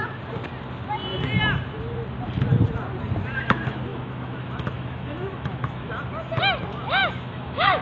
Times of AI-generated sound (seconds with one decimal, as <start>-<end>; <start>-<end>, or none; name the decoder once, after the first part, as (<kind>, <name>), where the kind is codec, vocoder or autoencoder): 3.9-5.9 (autoencoder, DAC-VAE); 7.0-7.8